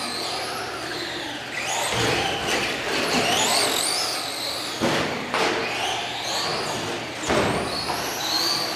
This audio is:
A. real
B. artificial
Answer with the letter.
A